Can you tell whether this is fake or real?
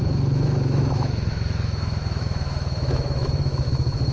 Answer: fake